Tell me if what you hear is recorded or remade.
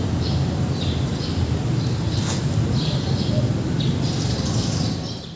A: recorded